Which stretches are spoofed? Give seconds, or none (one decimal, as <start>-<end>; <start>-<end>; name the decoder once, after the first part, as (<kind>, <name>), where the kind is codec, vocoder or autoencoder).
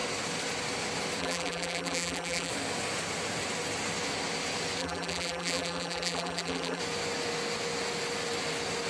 1.2-2.5 (vocoder, BigVGAN v2); 4.8-6.8